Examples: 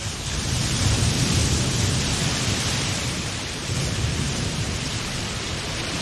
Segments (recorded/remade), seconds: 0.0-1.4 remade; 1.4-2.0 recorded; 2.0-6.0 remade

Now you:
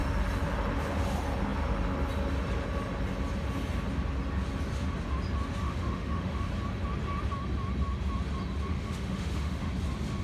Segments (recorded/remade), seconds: 0.0-5.6 recorded; 5.6-6.5 remade; 6.5-8.7 recorded; 8.7-9.7 remade; 9.7-10.2 recorded